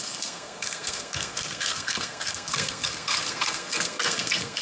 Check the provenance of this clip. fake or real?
fake